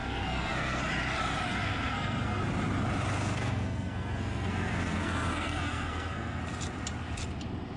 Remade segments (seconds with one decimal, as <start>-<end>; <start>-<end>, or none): 0.0-0.8; 1.5-2.4; 3.2-6.4